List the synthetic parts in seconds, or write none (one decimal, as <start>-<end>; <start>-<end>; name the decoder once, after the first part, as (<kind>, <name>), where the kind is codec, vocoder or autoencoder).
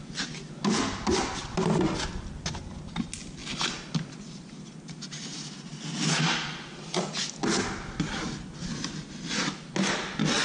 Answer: none